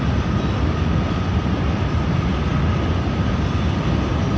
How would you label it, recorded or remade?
recorded